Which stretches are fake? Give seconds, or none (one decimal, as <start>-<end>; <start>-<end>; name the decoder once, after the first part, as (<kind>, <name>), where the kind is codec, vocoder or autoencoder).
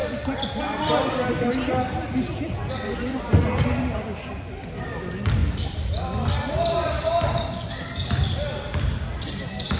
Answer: 5.4-7.4 (vocoder, BigVGAN v2); 8.0-9.2